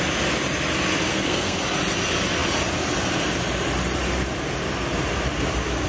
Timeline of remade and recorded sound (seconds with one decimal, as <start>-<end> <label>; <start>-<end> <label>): 0.0-1.1 recorded; 1.1-1.6 remade; 1.6-5.9 recorded